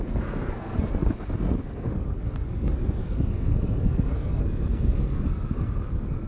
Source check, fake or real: fake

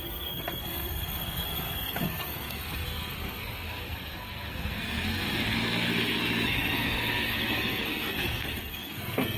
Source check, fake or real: fake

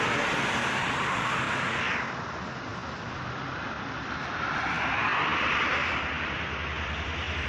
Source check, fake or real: real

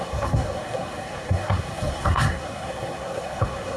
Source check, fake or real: fake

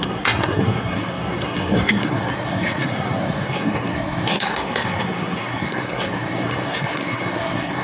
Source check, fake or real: fake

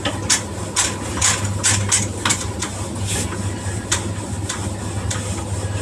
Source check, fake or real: real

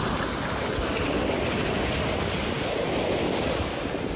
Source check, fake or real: real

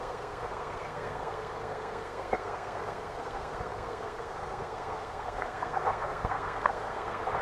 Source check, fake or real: fake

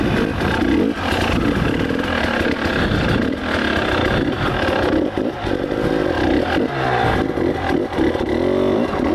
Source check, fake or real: real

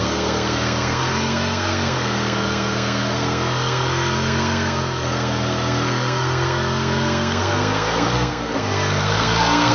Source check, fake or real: fake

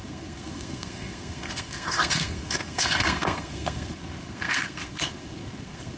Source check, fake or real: fake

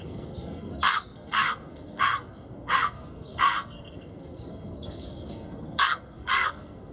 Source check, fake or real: fake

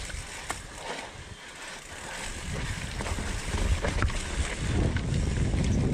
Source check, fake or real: real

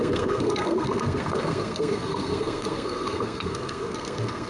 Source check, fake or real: fake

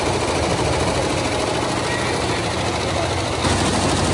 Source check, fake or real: real